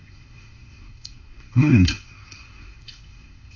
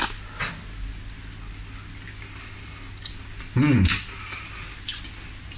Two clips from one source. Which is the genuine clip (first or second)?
second